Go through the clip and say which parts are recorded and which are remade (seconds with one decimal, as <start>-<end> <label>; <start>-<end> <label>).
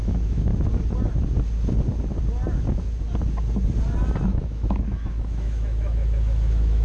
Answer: 0.0-0.5 remade; 0.5-4.2 recorded; 4.2-6.8 remade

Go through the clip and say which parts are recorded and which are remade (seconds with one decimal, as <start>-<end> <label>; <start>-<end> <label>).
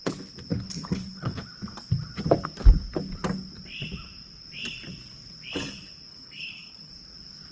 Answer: 0.0-0.5 recorded; 0.5-1.4 remade; 1.4-6.1 recorded; 6.1-6.9 remade; 6.9-7.5 recorded